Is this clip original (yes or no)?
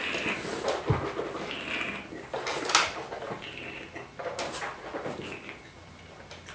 yes